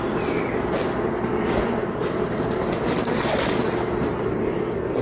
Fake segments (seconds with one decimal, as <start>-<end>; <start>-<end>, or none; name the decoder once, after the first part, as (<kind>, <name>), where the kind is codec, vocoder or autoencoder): none